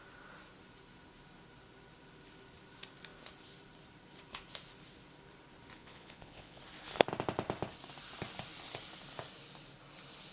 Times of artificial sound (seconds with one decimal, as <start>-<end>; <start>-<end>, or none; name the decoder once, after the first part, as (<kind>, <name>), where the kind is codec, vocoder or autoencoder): 5.8-6.6 (vocoder, Vocos)

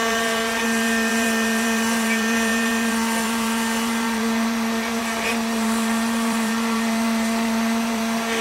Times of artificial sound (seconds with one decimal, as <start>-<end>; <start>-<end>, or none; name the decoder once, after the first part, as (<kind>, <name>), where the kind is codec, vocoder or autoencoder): 0.0-8.4 (vocoder, BigVGAN v2)

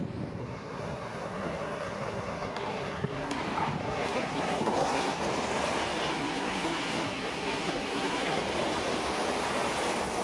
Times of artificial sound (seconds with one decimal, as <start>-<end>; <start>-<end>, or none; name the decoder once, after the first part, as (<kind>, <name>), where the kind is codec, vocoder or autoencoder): 0.4-3.4 (codec, SNAC); 3.8-5.2; 6.1-8.4

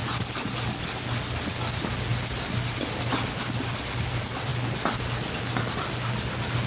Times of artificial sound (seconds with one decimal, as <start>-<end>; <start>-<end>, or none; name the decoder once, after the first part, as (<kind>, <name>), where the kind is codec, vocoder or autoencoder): none

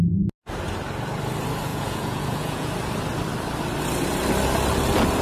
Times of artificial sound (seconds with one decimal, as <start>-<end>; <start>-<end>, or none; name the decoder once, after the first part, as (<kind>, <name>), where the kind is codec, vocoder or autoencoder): 1.7-2.7 (vocoder, Vocos)